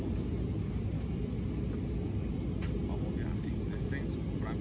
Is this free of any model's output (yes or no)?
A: yes